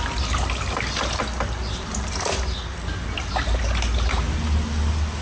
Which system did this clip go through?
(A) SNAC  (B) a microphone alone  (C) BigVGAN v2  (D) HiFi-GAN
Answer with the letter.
B